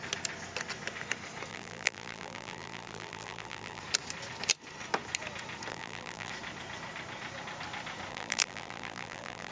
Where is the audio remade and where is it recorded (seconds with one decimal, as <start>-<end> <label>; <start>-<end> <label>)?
0.0-1.5 recorded; 1.5-3.8 remade; 3.8-5.7 recorded; 5.7-6.3 remade; 6.3-8.1 recorded; 8.1-9.5 remade